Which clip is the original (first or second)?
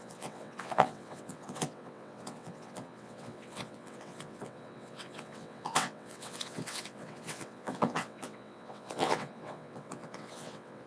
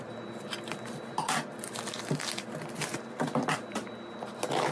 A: second